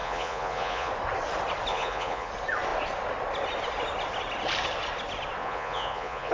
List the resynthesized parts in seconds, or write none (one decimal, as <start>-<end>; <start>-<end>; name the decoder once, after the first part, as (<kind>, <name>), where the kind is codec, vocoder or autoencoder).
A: 0.0-0.9 (vocoder, Vocos); 1.7-2.3; 5.4-6.3